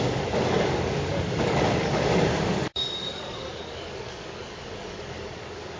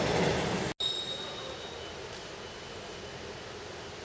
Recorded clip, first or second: second